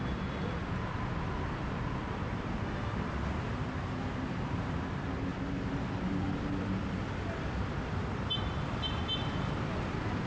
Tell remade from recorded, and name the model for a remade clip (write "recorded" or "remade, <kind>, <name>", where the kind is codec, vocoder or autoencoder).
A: recorded